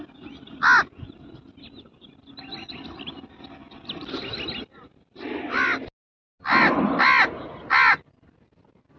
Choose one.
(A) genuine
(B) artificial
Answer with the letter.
A